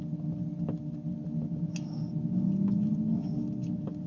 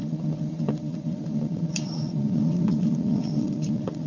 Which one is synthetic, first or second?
second